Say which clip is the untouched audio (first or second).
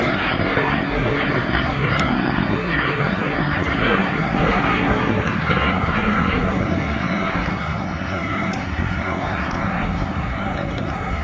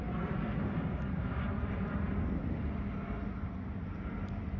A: second